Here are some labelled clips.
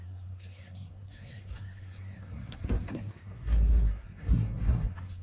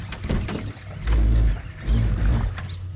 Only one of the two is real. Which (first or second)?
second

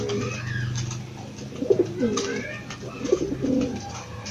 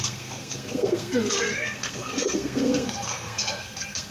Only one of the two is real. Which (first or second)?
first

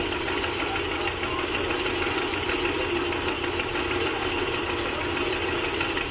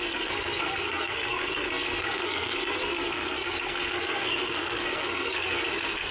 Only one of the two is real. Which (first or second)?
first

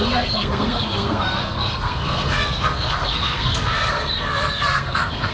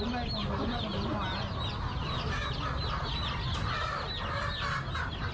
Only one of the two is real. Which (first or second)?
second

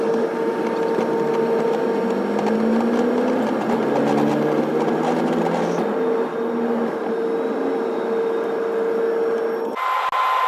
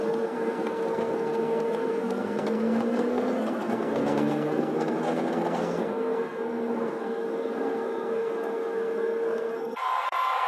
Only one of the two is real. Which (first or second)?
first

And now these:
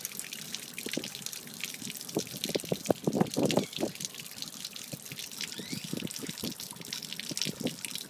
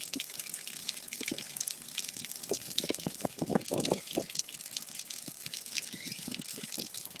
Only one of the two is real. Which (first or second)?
first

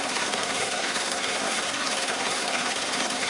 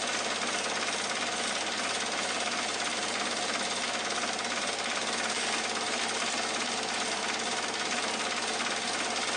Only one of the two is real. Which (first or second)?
second